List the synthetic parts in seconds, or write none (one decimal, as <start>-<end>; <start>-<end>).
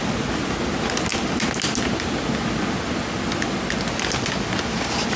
none